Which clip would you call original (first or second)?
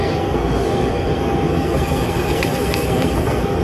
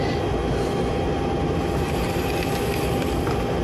second